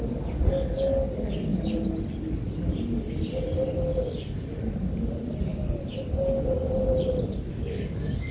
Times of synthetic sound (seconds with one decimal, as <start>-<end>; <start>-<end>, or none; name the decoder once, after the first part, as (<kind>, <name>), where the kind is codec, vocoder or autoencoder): 7.5-8.3 (codec, DAC)